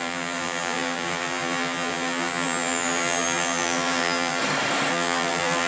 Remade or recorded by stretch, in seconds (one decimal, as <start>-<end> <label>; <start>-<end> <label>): 0.0-4.4 remade; 4.4-4.9 recorded; 4.9-5.7 remade